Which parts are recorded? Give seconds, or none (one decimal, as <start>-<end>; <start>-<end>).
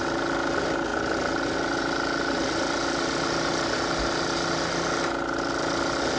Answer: 0.0-6.2